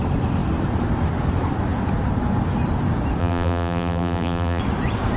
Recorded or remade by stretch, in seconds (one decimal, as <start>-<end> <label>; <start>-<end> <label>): 0.0-3.2 recorded; 3.2-4.6 remade; 4.6-5.2 recorded